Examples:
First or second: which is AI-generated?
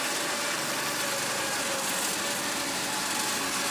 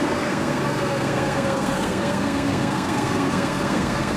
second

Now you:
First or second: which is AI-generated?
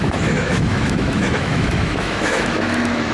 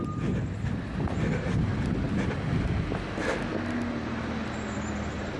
first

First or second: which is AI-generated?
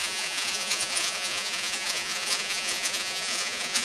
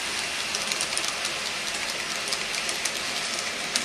first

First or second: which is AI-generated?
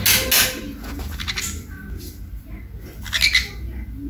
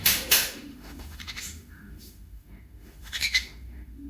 second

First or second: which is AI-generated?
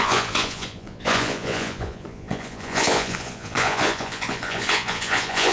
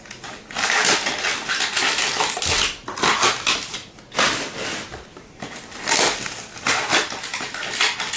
first